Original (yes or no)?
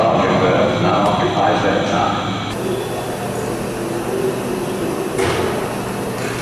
yes